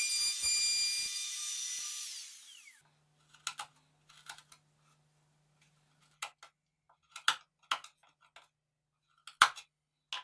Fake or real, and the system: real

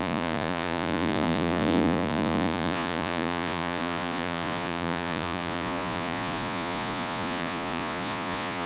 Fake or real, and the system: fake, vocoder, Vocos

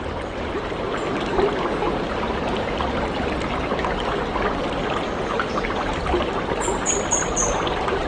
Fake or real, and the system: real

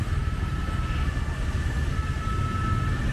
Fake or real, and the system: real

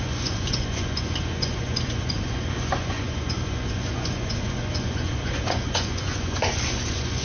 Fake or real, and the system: fake, vocoder, Vocos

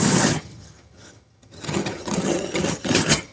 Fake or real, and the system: fake, vocoder, HiFi-GAN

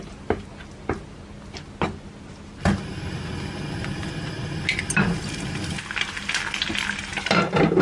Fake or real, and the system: real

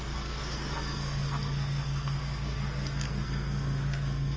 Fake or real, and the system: fake, codec, SNAC